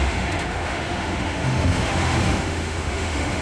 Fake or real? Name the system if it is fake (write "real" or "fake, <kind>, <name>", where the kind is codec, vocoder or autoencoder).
fake, autoencoder, DAC-VAE